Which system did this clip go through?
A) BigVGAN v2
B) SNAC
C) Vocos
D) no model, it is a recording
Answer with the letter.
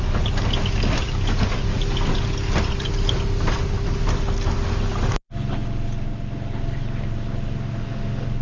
D